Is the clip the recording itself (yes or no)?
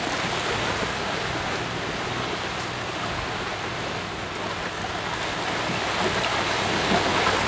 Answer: yes